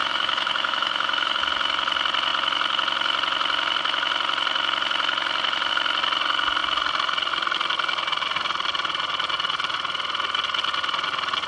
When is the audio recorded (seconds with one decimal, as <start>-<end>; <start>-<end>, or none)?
1.4-11.5